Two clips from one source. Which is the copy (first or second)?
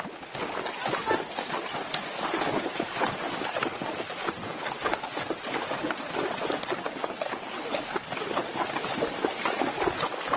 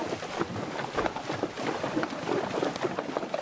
second